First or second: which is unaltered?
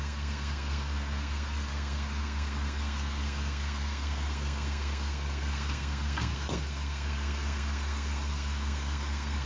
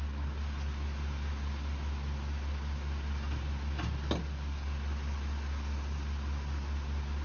second